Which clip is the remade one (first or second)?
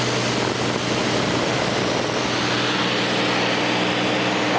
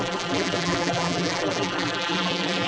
second